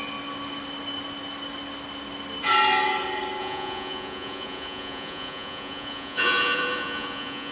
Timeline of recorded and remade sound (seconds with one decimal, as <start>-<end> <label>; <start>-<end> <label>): 0.0-3.4 recorded; 3.4-7.5 remade